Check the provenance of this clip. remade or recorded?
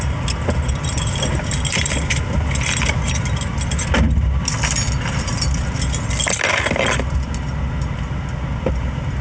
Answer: recorded